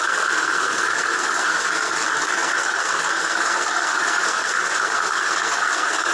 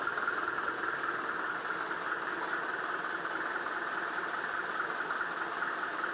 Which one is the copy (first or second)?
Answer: first